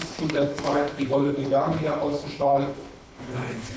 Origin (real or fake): fake